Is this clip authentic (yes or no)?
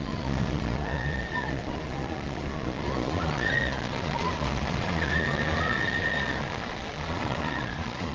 no